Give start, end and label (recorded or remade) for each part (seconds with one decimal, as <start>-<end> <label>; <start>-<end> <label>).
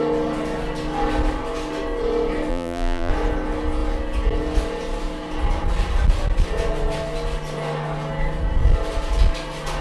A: 0.0-2.5 recorded; 2.5-3.1 remade; 3.1-9.8 recorded